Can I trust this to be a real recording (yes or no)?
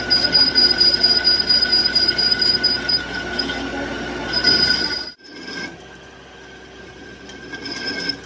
yes